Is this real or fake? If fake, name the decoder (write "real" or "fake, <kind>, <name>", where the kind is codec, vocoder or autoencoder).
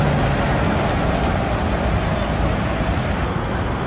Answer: real